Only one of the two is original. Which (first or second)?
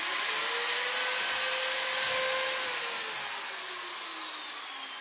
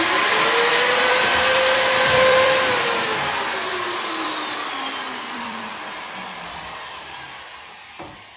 first